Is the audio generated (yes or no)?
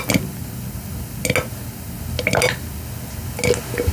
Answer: no